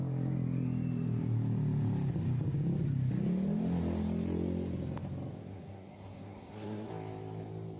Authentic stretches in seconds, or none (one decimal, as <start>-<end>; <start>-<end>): 0.0-5.4; 6.9-7.8